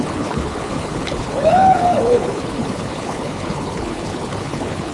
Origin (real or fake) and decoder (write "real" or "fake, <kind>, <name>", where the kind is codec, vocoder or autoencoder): fake, codec, HILCodec